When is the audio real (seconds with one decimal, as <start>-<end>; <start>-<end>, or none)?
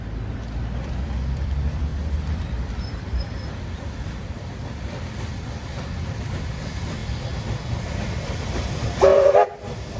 none